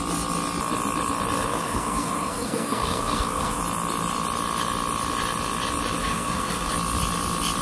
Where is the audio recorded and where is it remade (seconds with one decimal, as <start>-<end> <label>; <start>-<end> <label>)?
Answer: 0.0-1.5 recorded; 1.5-3.6 remade; 3.6-6.0 recorded; 6.0-6.7 remade; 6.7-7.6 recorded